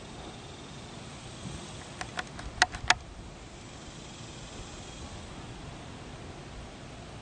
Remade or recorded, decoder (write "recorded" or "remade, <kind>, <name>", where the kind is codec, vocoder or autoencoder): recorded